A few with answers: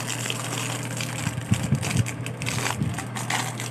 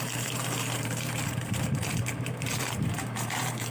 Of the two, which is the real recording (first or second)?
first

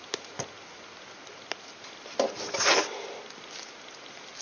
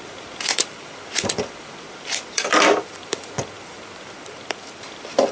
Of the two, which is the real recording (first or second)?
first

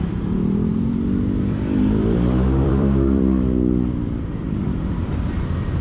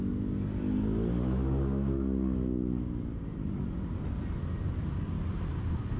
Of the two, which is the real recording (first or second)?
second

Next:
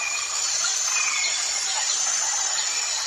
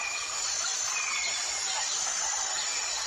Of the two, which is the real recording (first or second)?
second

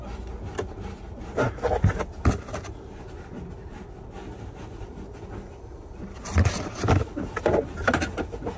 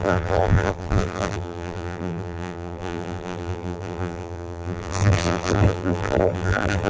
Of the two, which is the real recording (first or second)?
first